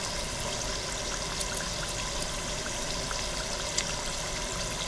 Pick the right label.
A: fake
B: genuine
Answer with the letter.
B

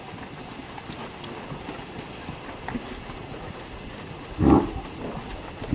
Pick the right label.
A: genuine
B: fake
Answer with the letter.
A